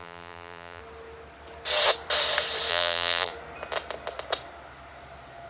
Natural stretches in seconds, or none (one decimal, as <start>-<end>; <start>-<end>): 0.8-2.7; 3.3-5.5